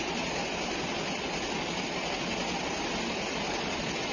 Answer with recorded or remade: recorded